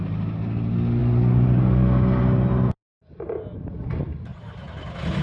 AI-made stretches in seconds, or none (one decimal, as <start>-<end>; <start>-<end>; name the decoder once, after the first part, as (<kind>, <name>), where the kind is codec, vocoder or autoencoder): none